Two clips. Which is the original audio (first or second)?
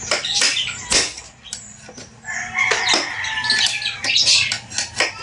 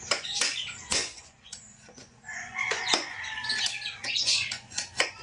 first